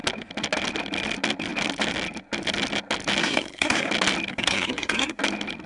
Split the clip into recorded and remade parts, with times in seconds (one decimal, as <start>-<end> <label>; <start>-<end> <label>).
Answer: 0.0-3.2 recorded; 3.2-3.9 remade; 3.9-4.3 recorded; 4.3-5.2 remade; 5.2-5.7 recorded